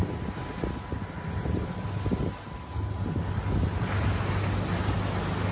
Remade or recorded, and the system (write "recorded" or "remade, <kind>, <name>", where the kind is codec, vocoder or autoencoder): recorded